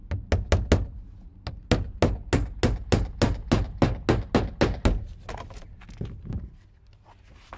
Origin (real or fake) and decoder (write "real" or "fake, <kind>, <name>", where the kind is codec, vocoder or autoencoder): real